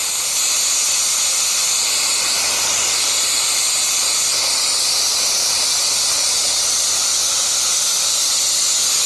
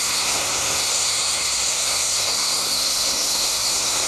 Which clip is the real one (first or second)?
first